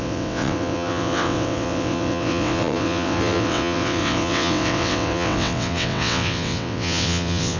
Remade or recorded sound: remade